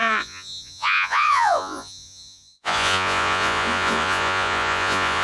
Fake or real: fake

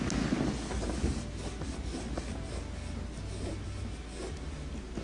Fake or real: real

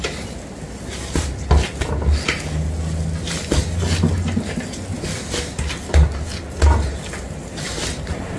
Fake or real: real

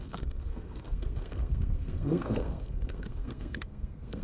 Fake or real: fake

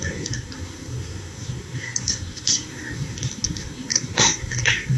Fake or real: fake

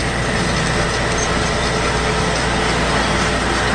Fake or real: real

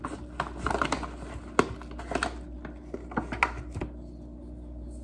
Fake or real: real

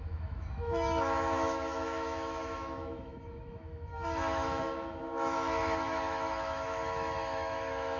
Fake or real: fake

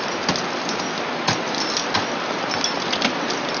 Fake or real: real